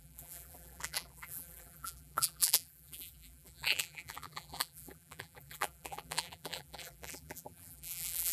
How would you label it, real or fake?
fake